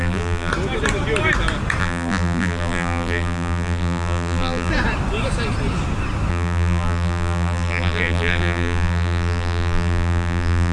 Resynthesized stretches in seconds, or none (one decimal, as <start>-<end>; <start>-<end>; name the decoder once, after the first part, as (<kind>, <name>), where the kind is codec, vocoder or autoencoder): 0.0-0.5 (vocoder, BigVGAN v2); 1.8-4.7; 6.3-10.7